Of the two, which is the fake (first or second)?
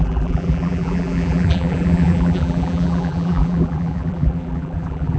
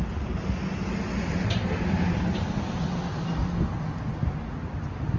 first